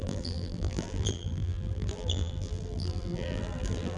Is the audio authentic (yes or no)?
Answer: no